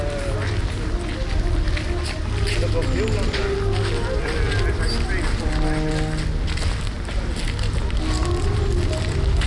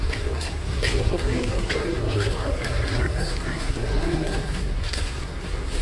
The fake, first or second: second